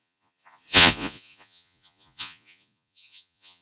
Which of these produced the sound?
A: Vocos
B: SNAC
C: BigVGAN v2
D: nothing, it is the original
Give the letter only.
A